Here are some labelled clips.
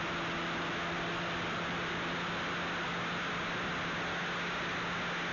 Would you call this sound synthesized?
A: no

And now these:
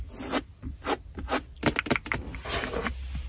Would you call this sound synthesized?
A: no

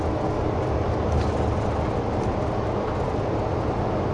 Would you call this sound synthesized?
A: no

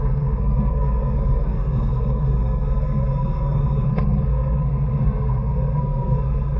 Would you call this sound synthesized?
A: yes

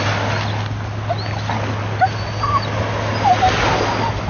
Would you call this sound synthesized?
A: no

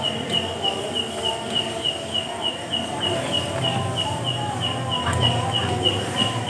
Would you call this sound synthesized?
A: no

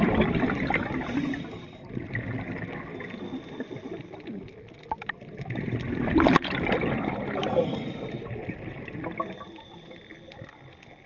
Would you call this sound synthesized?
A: no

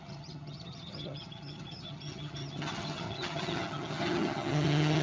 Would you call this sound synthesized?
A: yes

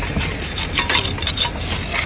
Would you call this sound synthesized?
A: no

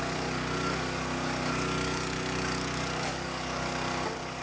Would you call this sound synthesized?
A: yes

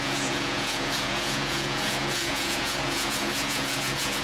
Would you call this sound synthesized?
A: yes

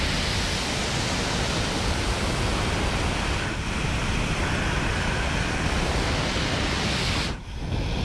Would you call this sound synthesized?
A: no